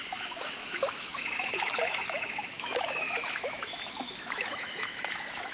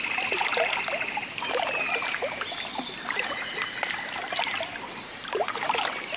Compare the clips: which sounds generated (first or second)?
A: first